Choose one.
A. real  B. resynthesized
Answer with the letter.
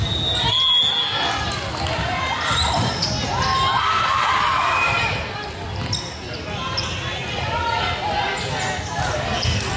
A